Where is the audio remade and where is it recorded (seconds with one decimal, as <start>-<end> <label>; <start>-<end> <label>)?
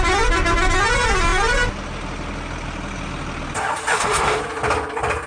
0.0-3.9 recorded; 3.9-4.4 remade; 4.4-5.3 recorded